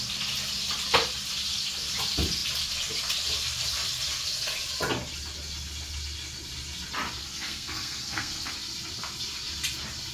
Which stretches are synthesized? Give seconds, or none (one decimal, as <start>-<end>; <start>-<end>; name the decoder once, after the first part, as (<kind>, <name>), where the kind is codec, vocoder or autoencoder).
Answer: 7.2-8.5 (codec, SNAC)

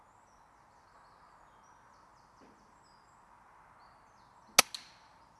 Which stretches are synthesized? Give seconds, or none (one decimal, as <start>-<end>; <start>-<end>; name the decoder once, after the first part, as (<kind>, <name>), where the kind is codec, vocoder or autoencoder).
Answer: none

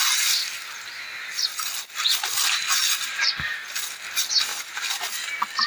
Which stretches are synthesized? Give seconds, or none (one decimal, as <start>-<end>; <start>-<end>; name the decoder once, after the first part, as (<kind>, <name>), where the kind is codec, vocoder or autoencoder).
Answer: 0.4-1.0 (vocoder, BigVGAN v2); 1.5-3.9

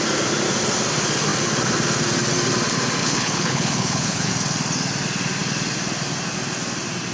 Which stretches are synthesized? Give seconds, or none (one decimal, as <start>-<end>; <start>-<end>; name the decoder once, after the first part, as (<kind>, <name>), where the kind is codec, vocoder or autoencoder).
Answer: 3.0-4.3 (codec, HILCodec)